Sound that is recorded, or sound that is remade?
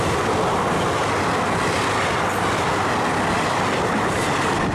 recorded